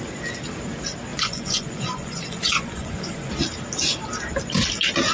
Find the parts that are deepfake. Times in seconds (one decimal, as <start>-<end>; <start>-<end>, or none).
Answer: 1.1-3.3